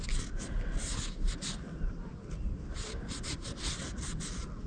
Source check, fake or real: real